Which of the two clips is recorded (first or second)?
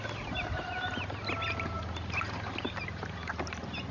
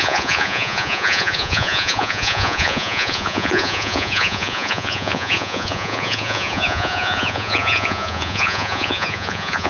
first